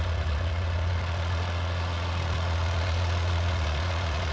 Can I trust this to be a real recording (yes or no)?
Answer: no